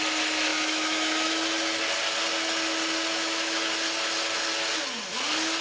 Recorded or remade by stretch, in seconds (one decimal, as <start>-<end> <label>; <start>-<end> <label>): 0.0-0.5 recorded; 0.5-1.3 remade; 1.3-3.1 recorded; 3.1-3.7 remade; 3.7-5.6 recorded